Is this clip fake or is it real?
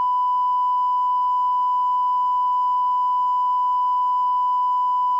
real